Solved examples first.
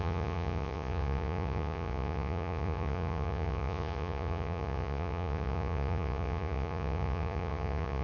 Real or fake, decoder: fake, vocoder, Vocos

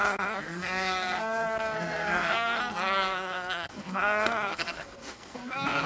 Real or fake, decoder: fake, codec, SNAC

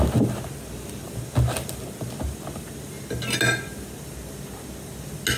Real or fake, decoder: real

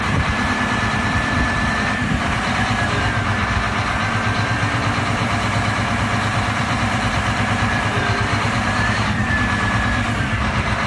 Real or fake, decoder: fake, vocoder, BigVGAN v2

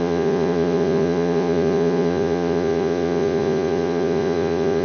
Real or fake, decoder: fake, vocoder, Vocos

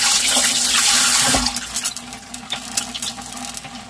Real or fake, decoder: real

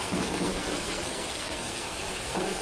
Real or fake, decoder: fake, codec, SNAC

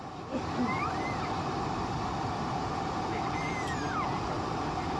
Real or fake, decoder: real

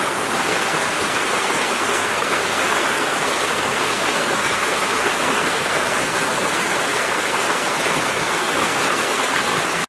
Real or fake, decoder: fake, codec, SNAC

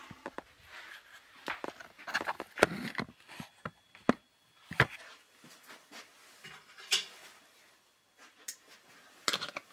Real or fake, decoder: real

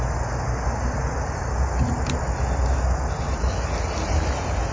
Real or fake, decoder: real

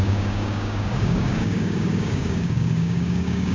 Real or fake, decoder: fake, codec, DAC